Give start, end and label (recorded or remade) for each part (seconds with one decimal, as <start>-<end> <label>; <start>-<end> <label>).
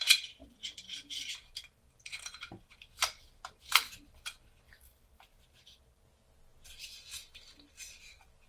0.0-0.4 recorded; 0.4-5.4 remade; 5.4-8.5 recorded